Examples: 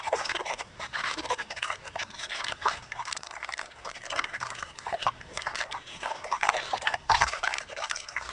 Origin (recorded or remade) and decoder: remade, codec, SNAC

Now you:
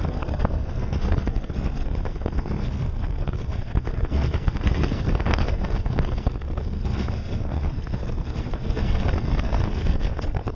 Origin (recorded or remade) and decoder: remade, codec, SNAC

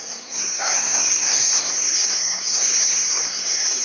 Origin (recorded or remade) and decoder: remade, codec, SNAC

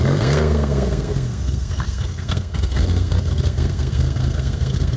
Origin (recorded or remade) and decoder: remade, codec, SNAC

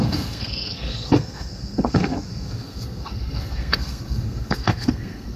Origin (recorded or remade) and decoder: remade, codec, SNAC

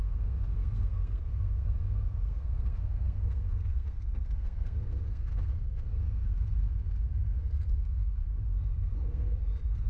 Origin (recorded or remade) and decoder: remade, codec, SNAC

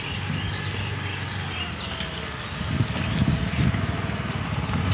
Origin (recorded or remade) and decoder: recorded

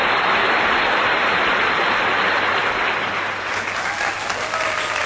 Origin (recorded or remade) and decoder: recorded